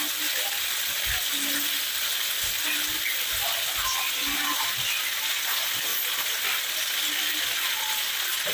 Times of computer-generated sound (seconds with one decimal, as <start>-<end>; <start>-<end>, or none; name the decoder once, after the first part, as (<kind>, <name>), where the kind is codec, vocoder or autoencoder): none